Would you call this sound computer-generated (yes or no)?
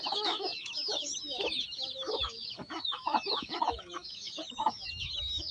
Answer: yes